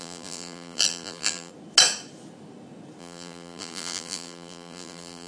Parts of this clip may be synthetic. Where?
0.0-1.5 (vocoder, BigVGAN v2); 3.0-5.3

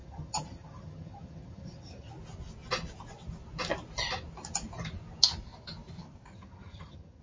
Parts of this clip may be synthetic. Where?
0.0-2.1 (vocoder, HiFi-GAN); 6.3-7.2

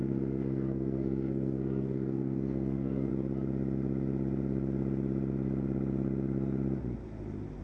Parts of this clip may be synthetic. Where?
0.0-3.1 (codec, SNAC)

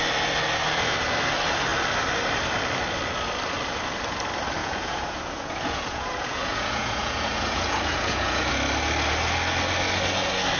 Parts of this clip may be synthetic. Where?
4.6-8.5 (vocoder, Vocos)

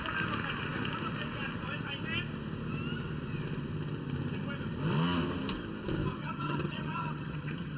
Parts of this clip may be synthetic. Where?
6.2-7.8 (vocoder, HiFi-GAN)